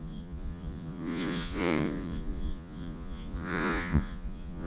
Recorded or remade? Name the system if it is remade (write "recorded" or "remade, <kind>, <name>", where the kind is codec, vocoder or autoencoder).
remade, vocoder, Vocos